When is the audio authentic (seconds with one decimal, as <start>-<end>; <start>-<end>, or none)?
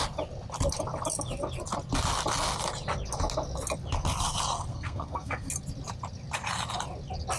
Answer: 0.0-4.7; 5.5-7.4